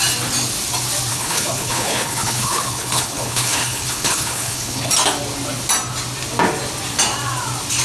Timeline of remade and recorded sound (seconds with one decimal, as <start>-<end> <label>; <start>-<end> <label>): 0.0-1.1 recorded; 1.1-4.9 remade; 4.9-7.8 recorded

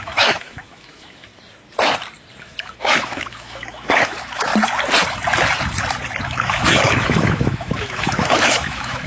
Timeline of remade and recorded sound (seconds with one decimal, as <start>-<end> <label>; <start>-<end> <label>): 0.0-1.3 remade; 1.3-2.4 recorded; 2.4-4.5 remade; 4.5-6.2 recorded; 6.2-9.1 remade

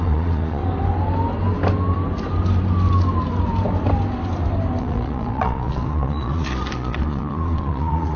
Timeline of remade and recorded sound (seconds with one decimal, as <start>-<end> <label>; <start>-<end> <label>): 0.0-0.6 remade; 0.6-4.8 recorded; 4.8-8.2 remade

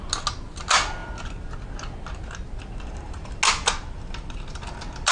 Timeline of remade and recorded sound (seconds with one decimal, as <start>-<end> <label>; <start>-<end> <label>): 0.0-5.1 recorded

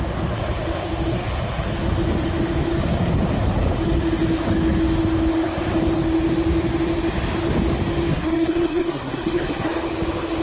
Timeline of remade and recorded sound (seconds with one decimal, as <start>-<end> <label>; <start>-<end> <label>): 0.0-8.1 recorded; 8.1-9.7 remade; 9.7-10.4 recorded